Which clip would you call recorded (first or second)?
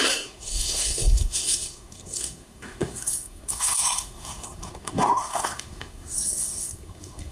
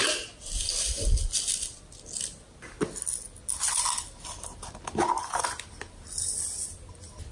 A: second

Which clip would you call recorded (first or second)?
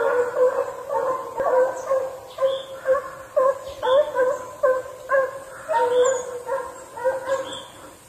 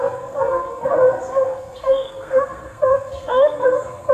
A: first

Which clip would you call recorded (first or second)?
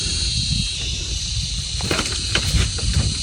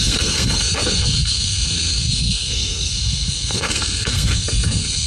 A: first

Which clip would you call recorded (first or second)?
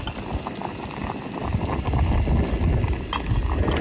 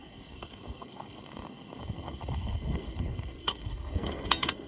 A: first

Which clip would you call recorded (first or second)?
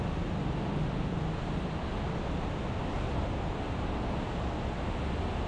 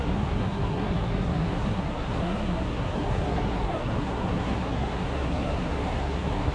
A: first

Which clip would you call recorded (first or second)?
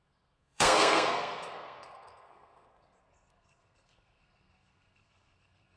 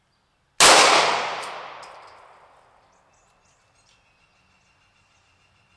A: second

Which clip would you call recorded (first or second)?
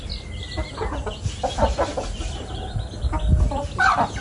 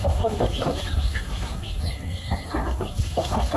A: first